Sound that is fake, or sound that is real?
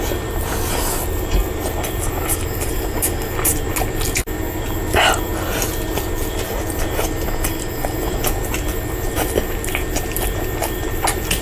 real